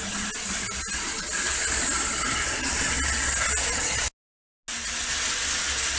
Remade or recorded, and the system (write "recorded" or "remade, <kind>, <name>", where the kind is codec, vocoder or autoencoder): recorded